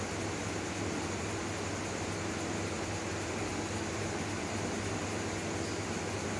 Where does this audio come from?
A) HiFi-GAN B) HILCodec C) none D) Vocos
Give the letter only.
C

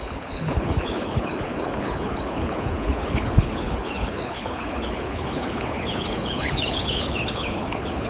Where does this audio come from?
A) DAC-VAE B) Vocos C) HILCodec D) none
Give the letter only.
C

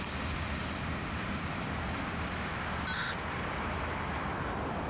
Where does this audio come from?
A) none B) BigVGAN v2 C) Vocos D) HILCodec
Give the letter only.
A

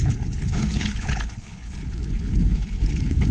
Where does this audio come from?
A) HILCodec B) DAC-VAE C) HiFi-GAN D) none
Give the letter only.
A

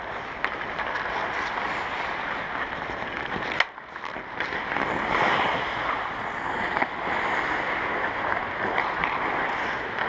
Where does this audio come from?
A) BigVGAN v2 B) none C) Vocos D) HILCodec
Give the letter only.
B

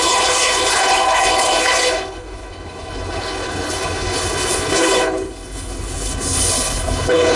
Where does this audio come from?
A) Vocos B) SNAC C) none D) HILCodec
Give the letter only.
D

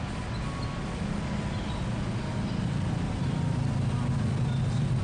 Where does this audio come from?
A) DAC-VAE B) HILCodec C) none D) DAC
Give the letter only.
C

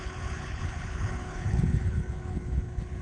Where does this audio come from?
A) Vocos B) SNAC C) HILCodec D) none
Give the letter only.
C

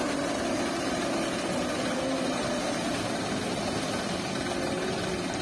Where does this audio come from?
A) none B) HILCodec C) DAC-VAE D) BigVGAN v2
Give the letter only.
A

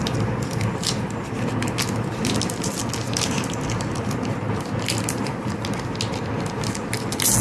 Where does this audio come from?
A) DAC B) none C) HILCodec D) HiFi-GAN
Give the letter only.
B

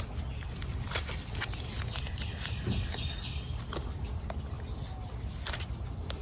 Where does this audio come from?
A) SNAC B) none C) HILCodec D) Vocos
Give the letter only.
B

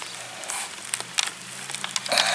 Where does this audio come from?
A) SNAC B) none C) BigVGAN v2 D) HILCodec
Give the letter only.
B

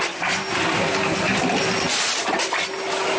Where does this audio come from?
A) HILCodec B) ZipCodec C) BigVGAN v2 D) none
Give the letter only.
D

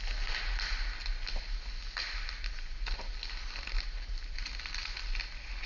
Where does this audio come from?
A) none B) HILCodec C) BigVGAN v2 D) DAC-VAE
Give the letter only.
A